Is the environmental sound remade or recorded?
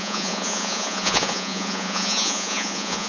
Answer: remade